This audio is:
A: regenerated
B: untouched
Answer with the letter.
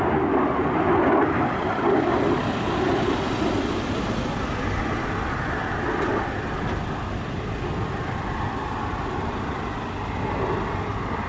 B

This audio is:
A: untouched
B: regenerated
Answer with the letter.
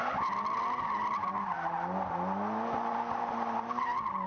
A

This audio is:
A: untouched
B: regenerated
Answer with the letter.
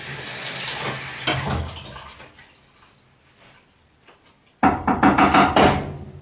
A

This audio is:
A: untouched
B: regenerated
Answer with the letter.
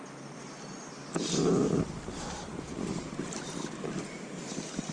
A